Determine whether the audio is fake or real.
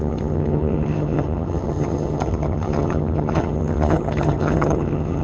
fake